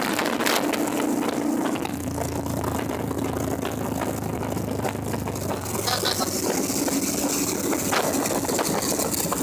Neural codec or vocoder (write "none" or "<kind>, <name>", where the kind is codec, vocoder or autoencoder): none